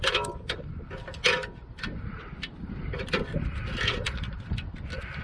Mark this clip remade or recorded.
recorded